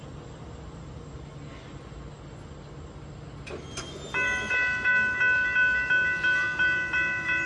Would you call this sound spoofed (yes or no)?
no